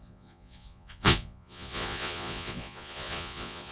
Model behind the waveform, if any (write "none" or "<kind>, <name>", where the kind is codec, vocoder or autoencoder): vocoder, Vocos